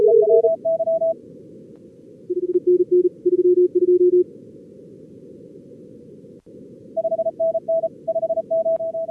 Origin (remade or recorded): recorded